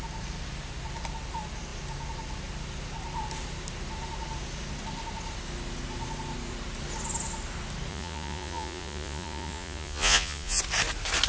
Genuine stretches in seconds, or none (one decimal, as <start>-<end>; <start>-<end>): 0.0-7.9; 10.6-11.3